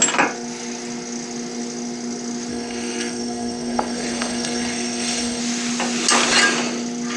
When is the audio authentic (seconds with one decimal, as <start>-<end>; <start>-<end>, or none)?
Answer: 0.0-2.5; 5.4-7.2